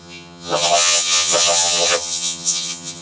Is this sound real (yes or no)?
no